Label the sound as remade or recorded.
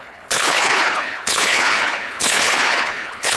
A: remade